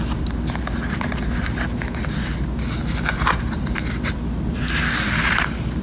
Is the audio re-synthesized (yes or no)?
no